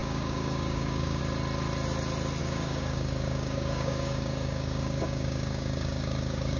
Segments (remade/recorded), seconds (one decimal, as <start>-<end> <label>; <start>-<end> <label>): 0.0-1.2 remade; 1.2-2.4 recorded; 2.4-6.6 remade